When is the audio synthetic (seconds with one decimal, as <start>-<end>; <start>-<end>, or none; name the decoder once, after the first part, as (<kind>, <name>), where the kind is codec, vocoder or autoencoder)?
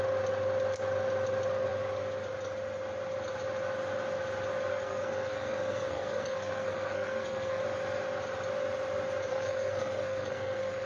4.7-7.6 (codec, SNAC); 9.3-10.9